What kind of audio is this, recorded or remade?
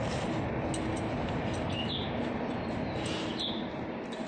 recorded